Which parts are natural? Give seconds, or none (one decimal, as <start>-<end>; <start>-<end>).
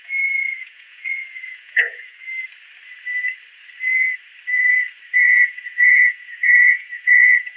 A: 2.3-5.1